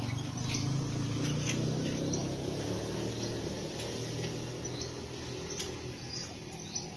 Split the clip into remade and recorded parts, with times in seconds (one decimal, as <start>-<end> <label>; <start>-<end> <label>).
0.0-7.0 recorded